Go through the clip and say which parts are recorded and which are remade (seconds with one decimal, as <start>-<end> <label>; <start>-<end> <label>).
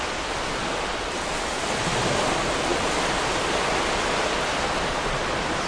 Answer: 0.0-5.7 recorded